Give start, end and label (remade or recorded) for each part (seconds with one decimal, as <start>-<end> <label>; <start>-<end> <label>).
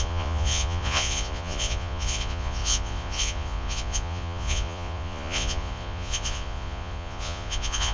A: 0.0-7.9 remade